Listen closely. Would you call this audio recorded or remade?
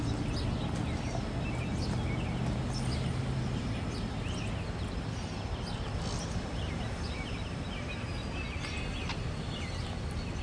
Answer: recorded